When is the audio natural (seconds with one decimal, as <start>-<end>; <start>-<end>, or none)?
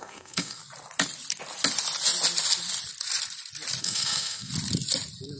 0.6-3.8; 4.5-5.4